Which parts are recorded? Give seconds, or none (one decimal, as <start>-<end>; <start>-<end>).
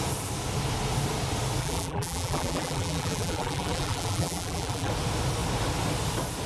0.0-1.6; 4.9-6.5